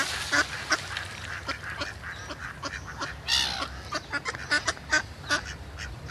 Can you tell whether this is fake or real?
real